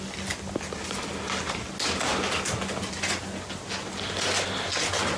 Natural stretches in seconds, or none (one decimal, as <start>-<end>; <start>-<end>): 0.0-5.2